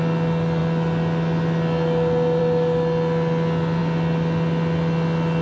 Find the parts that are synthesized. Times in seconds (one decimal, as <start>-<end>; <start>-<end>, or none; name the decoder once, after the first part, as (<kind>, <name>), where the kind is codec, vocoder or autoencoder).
none

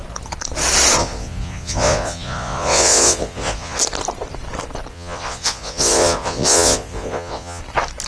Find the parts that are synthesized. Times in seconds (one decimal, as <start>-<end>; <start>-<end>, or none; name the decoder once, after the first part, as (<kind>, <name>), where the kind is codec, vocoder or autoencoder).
1.0-3.8 (vocoder, Vocos); 4.9-7.6